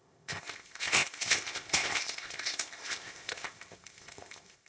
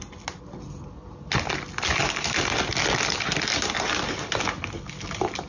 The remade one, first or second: first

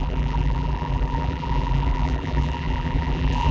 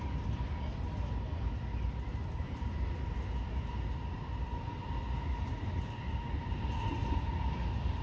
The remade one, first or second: first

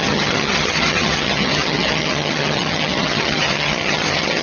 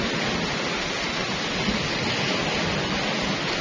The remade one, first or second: first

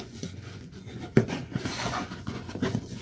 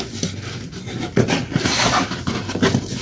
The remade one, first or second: first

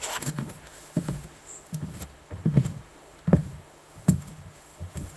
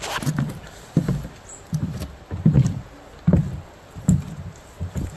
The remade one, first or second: first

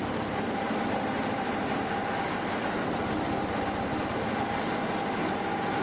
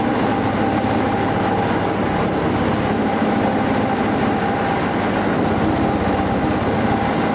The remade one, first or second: first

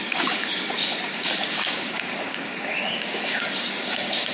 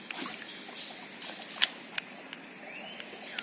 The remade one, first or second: first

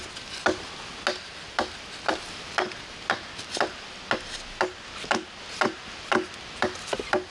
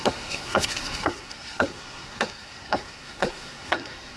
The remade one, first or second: second